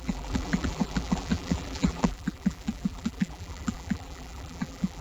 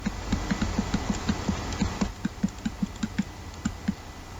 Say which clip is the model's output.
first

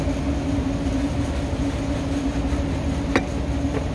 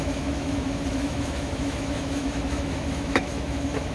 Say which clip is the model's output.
second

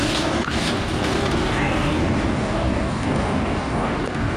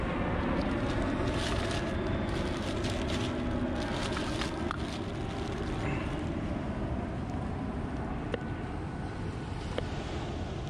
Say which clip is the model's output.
first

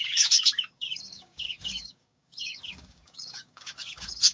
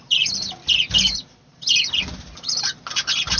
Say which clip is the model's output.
first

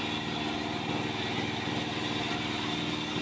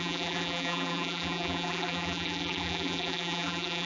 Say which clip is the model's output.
second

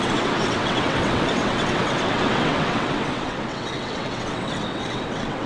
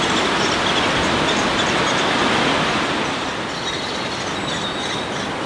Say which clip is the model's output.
first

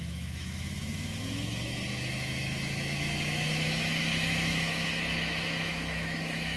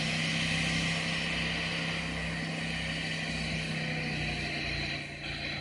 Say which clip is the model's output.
first